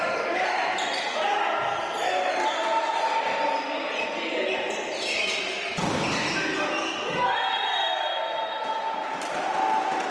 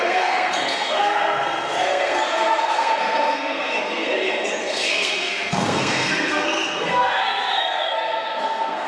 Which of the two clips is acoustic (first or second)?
first